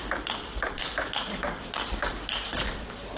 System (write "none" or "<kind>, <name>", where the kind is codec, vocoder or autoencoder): none